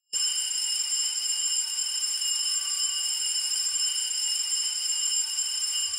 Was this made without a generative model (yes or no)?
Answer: no